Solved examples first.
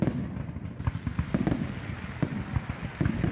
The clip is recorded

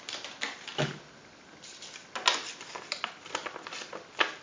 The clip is recorded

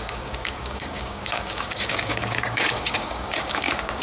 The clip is remade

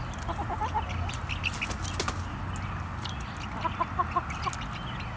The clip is recorded